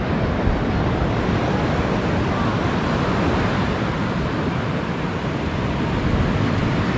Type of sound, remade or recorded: recorded